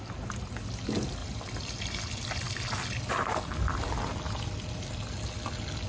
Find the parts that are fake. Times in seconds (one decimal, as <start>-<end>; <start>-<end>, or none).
none